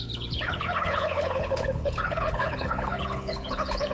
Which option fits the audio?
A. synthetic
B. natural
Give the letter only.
A